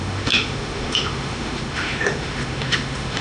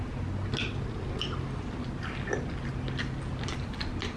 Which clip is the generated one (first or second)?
first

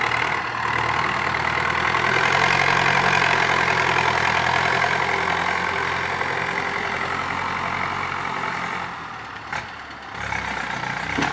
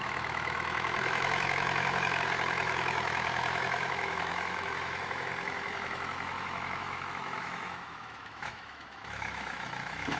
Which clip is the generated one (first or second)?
second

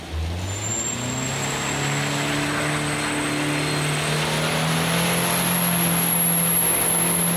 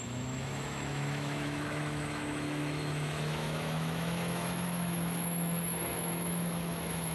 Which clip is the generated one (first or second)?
second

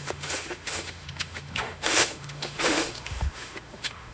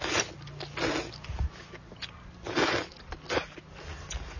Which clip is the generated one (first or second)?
first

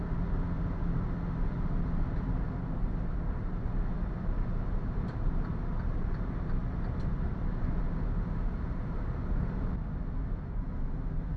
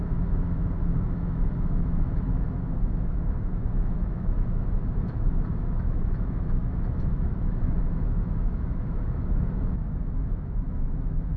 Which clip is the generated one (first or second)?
second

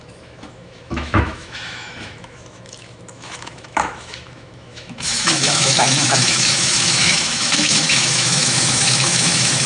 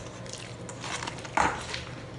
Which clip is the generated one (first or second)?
first